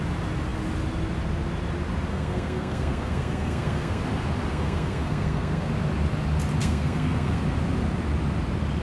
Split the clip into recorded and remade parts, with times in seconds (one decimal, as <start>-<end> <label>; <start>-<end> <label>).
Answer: 0.0-2.1 recorded; 2.1-4.0 remade; 4.0-4.5 recorded; 4.5-5.7 remade; 5.7-6.6 recorded; 6.6-7.4 remade; 7.4-8.8 recorded